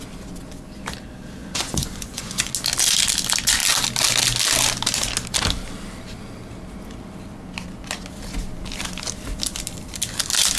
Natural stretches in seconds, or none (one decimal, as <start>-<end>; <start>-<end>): 0.0-1.4; 2.5-10.6